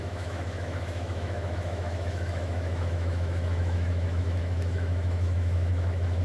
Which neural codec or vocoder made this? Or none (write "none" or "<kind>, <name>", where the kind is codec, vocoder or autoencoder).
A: autoencoder, DAC-VAE